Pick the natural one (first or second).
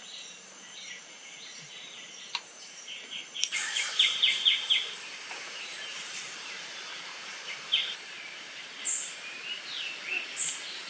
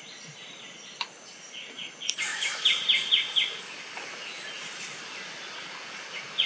second